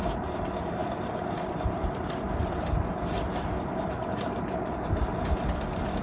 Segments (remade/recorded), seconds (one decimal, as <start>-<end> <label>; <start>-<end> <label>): 0.0-5.1 remade; 5.1-6.0 recorded